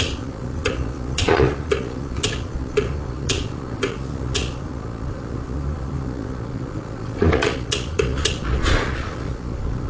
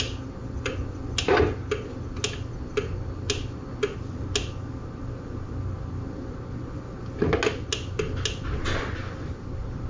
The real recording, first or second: second